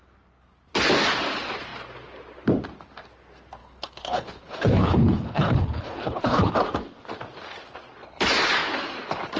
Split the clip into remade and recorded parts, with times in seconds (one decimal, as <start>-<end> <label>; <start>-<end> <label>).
0.0-3.6 recorded; 3.6-6.5 remade; 6.5-9.4 recorded